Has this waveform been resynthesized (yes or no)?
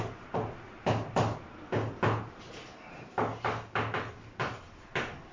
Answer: no